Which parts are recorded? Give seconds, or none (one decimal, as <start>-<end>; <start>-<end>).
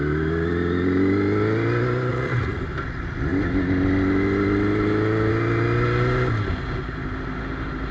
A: 0.0-2.1; 2.6-7.9